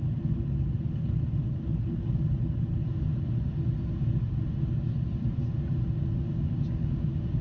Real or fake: real